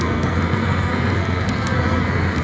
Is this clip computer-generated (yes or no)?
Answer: yes